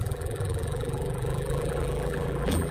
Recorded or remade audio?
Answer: remade